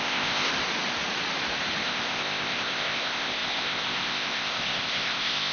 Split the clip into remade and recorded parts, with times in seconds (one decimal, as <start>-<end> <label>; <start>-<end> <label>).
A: 0.0-0.5 remade; 0.5-1.8 recorded; 1.8-5.5 remade